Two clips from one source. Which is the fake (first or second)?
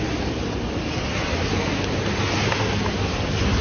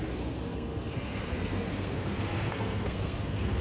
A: second